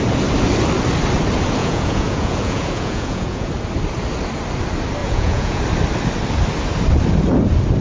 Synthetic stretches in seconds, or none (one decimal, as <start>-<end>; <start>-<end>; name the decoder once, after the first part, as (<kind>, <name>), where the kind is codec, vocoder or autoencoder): 1.6-3.5 (vocoder, Vocos); 5.0-5.6